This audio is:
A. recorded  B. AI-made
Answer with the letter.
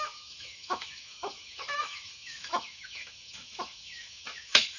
B